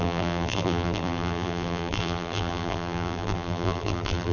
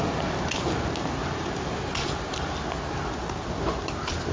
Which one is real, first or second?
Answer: second